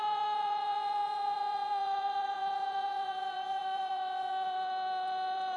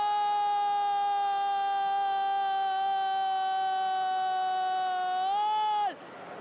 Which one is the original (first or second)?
second